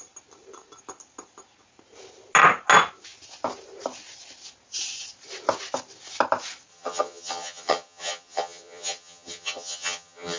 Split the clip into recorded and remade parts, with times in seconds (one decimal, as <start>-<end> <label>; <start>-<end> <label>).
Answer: 0.0-6.7 recorded; 6.7-10.4 remade